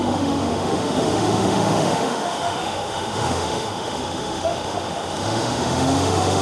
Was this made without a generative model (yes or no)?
no